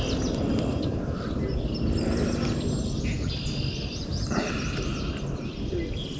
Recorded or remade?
recorded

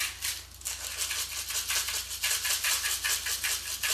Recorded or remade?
recorded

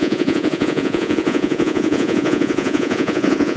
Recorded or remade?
remade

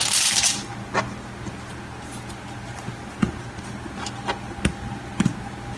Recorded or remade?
recorded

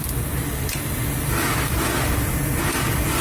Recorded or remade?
recorded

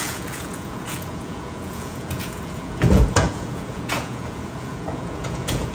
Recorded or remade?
remade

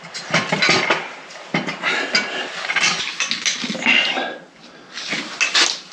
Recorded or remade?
recorded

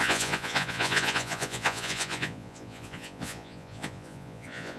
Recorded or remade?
remade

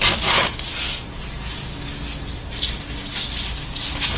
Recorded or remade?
recorded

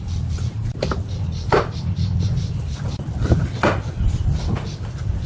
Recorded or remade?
recorded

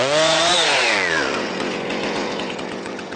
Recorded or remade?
remade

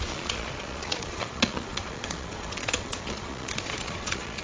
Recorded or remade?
remade